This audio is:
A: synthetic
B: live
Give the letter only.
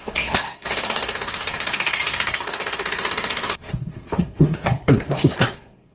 A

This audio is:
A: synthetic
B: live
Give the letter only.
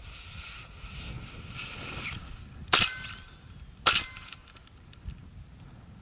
B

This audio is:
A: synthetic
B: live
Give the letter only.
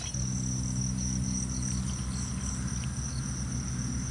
B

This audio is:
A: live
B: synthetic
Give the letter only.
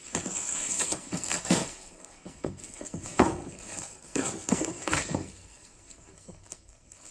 B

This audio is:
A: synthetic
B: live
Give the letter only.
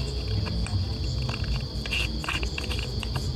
B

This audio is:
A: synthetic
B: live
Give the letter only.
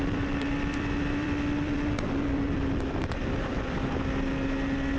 A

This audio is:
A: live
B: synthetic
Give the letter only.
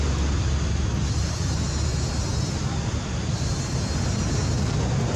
A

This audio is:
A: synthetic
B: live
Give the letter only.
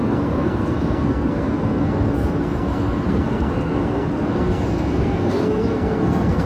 A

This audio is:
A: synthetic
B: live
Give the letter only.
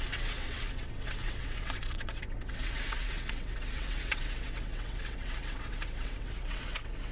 A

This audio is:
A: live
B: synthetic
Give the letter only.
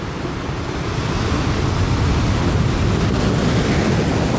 A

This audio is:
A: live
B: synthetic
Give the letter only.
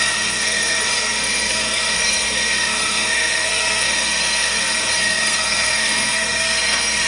B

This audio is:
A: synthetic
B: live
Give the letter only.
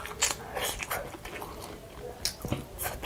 B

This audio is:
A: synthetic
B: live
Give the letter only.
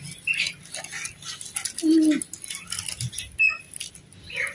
B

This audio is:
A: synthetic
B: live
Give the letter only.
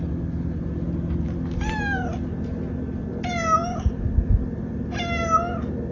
B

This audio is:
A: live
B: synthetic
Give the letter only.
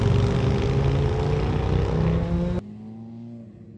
A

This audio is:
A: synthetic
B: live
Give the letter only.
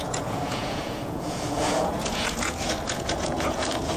A